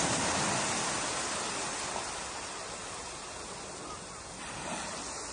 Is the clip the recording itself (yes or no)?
yes